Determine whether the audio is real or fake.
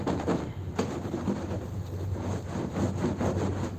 real